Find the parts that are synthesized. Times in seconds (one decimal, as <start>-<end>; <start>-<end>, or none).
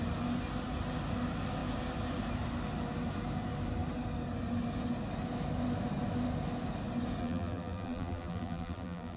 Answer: 7.2-9.2